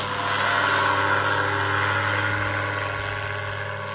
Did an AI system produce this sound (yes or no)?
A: no